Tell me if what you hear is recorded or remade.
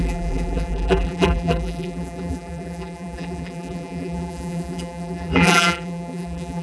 remade